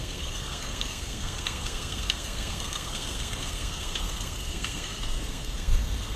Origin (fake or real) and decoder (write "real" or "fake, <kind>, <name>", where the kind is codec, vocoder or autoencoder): fake, codec, SNAC